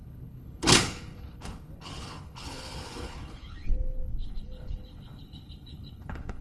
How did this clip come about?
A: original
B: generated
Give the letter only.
B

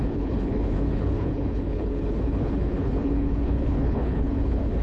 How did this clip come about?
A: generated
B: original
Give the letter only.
A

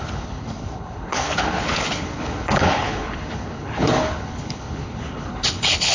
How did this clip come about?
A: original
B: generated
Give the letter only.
B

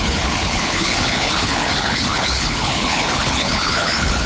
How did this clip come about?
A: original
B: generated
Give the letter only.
B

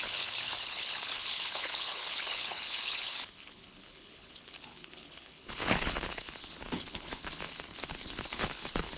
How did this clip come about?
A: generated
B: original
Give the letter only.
A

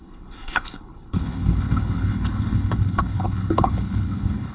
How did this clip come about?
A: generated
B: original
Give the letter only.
A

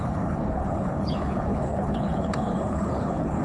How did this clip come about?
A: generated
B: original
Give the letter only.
A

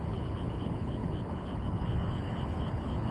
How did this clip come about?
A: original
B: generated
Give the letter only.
B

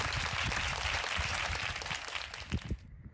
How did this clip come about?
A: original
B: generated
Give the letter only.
A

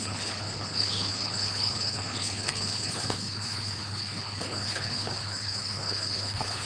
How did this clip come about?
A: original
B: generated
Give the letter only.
B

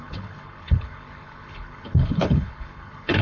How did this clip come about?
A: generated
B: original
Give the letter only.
A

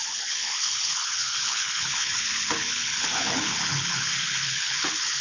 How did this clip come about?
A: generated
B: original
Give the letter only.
A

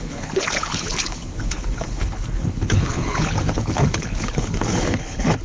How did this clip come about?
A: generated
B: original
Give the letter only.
A